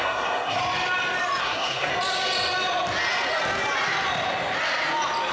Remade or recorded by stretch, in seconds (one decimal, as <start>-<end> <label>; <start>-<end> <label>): 0.0-0.6 remade; 0.6-1.4 recorded; 1.4-1.9 remade; 1.9-5.3 recorded